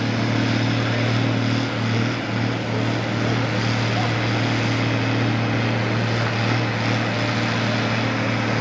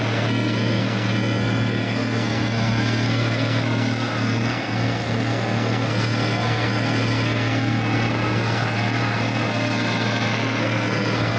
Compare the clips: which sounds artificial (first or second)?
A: second